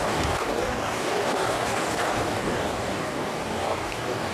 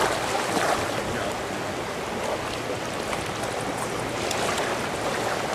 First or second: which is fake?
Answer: first